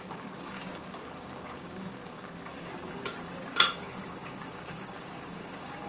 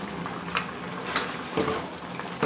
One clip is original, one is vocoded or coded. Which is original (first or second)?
second